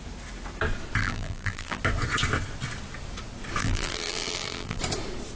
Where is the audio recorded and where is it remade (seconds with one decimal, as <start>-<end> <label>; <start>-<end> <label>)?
0.0-1.0 recorded; 1.0-1.8 remade; 1.8-3.6 recorded; 3.6-4.8 remade; 4.8-5.3 recorded